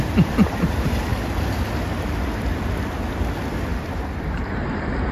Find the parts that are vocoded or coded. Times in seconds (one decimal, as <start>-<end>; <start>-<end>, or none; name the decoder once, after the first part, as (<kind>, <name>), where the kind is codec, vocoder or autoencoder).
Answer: 0.0-1.1 (vocoder, BigVGAN v2); 4.2-5.1